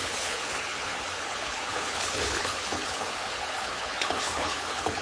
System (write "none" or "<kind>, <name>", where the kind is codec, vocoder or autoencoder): codec, HILCodec